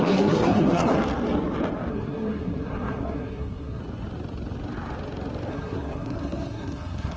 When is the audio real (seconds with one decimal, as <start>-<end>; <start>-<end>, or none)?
0.9-1.9; 3.8-5.5